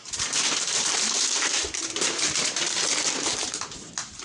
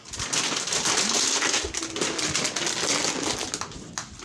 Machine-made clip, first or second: first